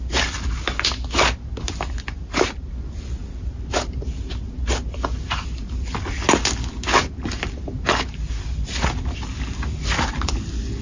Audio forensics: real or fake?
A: real